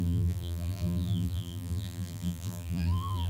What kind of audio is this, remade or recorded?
remade